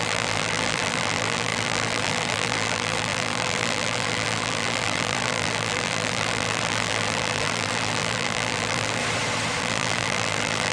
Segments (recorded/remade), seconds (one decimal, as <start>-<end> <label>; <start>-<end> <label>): 0.0-9.0 remade; 9.0-9.6 recorded; 9.6-10.7 remade